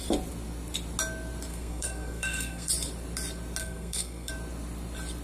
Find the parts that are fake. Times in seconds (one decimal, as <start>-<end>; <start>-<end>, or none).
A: 1.5-2.7; 3.6-4.3